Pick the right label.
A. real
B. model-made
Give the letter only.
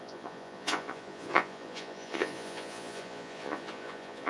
B